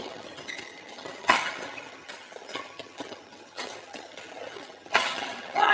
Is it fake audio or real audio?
fake